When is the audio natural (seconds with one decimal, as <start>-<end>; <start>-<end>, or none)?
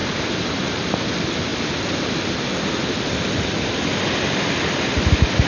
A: 0.0-5.5